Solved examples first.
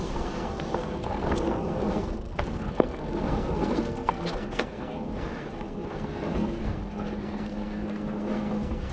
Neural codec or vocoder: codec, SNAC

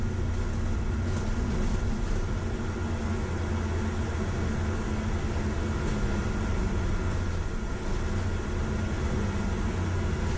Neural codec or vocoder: none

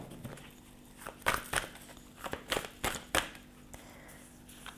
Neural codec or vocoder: none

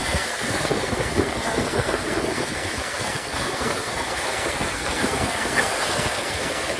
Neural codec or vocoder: codec, SNAC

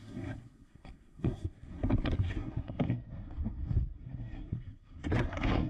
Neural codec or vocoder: codec, SNAC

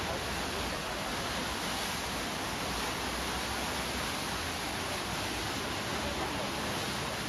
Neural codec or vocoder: none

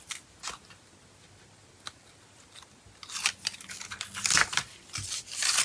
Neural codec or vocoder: none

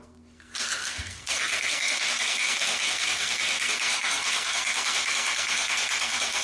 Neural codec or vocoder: codec, SNAC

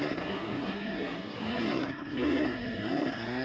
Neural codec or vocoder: codec, SNAC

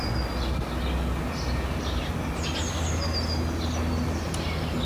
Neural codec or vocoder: none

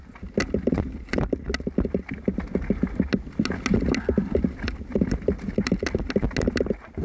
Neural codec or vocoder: none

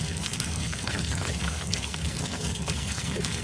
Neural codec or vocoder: codec, SNAC